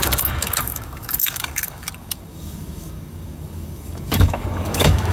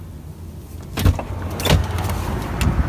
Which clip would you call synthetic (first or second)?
first